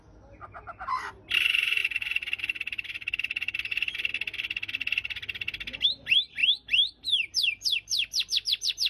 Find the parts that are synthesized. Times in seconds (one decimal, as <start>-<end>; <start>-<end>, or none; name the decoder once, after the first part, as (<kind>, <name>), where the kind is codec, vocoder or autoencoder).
1.8-4.1 (vocoder, BigVGAN v2); 6.4-8.9